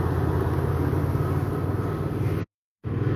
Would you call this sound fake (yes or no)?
no